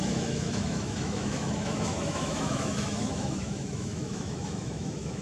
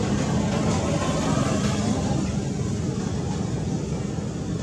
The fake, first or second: first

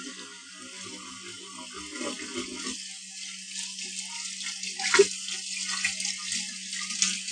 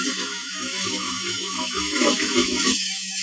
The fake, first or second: second